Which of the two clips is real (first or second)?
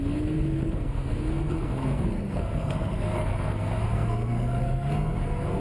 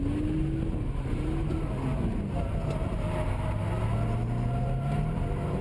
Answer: second